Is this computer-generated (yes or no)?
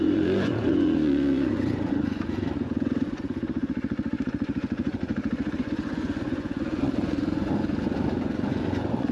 yes